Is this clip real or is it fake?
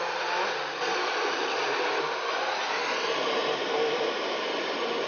real